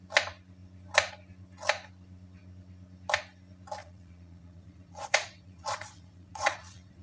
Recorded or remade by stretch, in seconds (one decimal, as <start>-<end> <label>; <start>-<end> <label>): 0.0-3.8 recorded; 3.8-7.0 remade